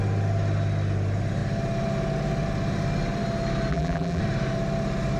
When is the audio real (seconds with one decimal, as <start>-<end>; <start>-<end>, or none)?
0.0-3.7; 4.2-5.2